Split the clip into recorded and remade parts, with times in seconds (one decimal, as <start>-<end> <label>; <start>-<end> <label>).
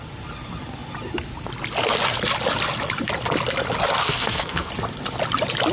0.0-4.0 recorded; 4.0-4.7 remade; 4.7-5.7 recorded